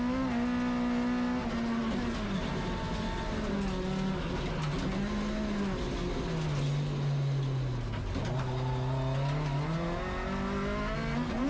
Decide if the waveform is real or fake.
real